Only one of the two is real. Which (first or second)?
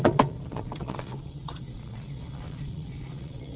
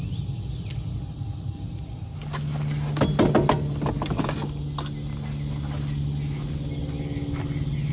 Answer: second